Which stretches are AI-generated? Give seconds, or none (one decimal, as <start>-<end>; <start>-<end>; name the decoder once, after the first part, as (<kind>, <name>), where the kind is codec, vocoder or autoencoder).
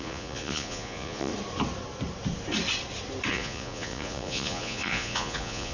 0.0-1.3 (vocoder, Vocos); 3.3-5.7